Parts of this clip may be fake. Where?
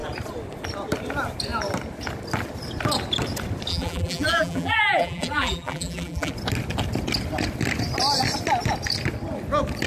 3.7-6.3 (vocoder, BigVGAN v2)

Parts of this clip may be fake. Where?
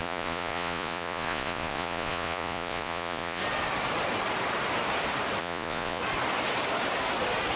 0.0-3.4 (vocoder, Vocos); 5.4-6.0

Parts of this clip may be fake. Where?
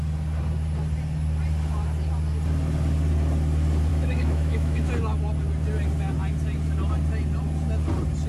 3.9-4.9 (autoencoder, DAC-VAE)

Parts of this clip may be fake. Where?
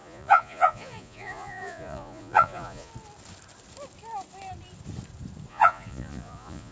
0.0-2.9 (vocoder, Vocos); 5.5-6.7